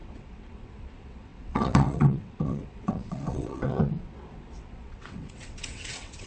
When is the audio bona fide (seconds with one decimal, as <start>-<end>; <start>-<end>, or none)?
none